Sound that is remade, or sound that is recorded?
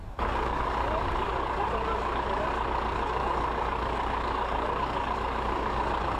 remade